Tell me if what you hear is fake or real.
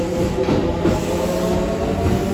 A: real